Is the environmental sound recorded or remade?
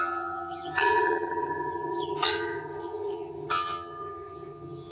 remade